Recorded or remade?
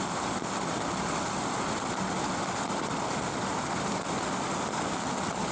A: recorded